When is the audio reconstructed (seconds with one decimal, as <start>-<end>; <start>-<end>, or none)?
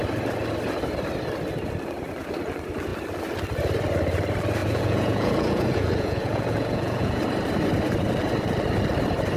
4.6-7.2